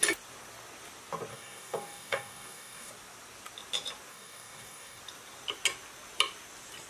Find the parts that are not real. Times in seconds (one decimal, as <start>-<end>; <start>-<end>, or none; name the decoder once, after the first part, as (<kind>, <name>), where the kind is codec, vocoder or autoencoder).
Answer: 1.3-2.9 (codec, DAC); 4.1-5.0